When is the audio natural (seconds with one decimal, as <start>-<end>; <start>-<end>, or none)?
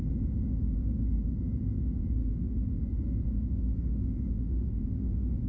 0.0-0.5; 1.1-2.2; 2.9-3.3